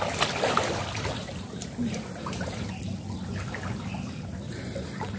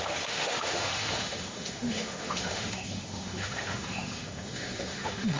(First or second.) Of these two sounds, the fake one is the second